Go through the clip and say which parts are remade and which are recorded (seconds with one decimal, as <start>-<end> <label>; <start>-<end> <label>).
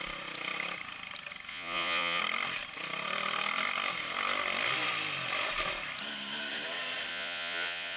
0.0-1.5 recorded; 1.5-2.2 remade; 2.2-7.1 recorded; 7.1-8.0 remade